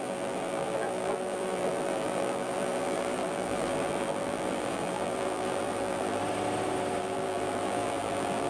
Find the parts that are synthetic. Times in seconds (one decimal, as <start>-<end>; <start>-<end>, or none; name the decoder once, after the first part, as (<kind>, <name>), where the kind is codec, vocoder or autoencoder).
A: 0.0-6.2 (vocoder, BigVGAN v2); 7.0-8.5